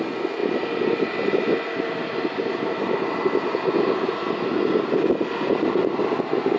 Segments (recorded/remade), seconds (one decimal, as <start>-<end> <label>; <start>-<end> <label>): 0.0-6.6 recorded